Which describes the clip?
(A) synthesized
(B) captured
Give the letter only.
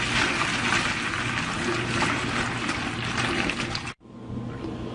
B